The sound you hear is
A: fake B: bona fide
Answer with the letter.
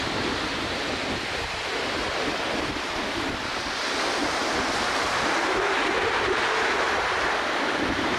A